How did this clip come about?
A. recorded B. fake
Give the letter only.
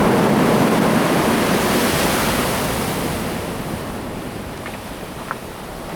A